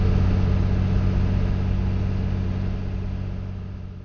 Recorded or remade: recorded